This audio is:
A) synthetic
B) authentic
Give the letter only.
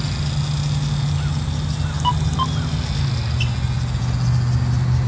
B